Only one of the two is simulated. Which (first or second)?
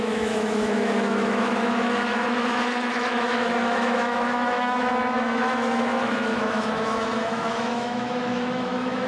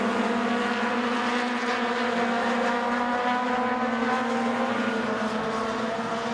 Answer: first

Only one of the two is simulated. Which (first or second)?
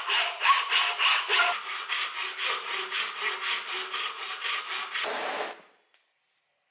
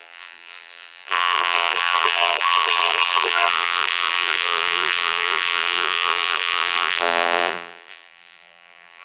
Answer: second